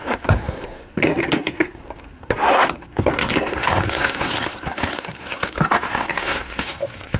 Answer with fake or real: fake